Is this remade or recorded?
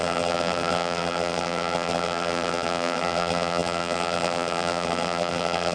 remade